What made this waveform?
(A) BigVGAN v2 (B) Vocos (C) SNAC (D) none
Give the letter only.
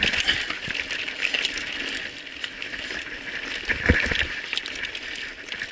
A